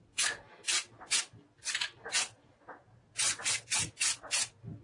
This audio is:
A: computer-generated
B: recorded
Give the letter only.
B